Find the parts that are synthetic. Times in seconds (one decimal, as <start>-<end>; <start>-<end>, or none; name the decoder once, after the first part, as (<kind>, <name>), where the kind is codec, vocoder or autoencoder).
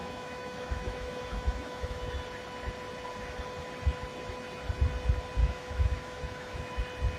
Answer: 0.0-2.1 (autoencoder, DAC-VAE); 5.4-6.8